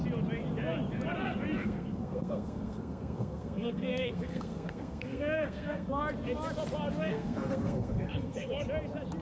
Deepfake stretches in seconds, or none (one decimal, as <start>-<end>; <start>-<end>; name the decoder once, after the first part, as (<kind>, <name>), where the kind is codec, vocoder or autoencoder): 1.6-6.0 (codec, SNAC); 7.0-8.5

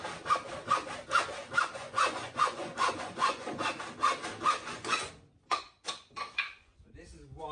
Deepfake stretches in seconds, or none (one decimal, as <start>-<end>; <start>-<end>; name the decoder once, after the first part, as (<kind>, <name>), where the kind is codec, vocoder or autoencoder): 1.4-3.6 (vocoder, Vocos); 4.6-5.1; 5.5-6.9

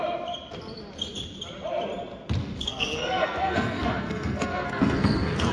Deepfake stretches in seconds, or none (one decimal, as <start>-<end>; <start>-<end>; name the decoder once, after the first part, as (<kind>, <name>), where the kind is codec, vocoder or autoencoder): 2.4-5.5 (codec, SNAC)

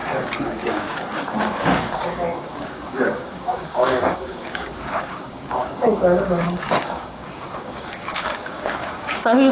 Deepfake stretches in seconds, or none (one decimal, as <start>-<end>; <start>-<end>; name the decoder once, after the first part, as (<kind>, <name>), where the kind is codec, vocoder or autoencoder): 0.0-9.5 (codec, DAC)